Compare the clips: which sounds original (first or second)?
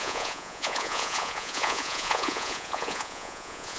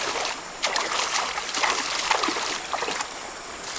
second